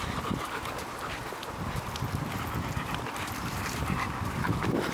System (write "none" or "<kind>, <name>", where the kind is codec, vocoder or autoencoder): none